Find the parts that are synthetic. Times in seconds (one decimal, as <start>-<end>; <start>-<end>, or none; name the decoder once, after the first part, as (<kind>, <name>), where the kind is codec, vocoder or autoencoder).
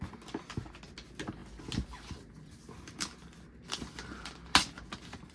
none